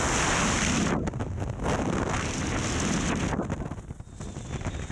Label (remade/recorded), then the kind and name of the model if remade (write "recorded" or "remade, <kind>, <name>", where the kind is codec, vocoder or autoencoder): recorded